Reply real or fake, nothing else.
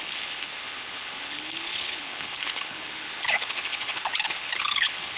fake